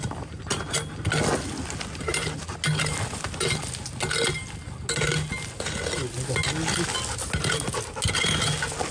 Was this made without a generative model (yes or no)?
yes